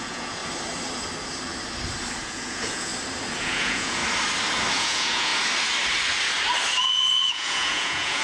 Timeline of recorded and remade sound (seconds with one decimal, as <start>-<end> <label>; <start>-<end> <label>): 0.0-0.4 remade; 0.4-2.2 recorded; 2.2-2.9 remade; 2.9-3.4 recorded; 3.4-4.0 remade; 4.0-4.7 recorded; 4.7-5.3 remade; 5.3-6.8 recorded; 6.8-8.2 remade